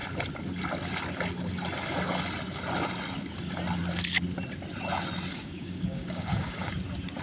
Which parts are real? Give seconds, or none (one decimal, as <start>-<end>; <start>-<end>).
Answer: 0.0-5.3; 6.7-7.2